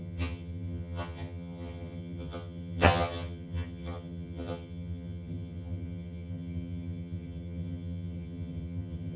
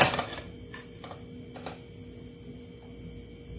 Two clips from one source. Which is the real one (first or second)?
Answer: second